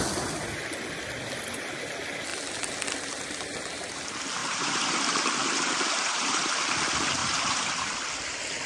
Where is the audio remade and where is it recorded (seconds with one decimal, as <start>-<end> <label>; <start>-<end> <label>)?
0.0-4.4 recorded; 4.4-6.5 remade; 6.5-7.2 recorded; 7.2-7.7 remade; 7.7-8.7 recorded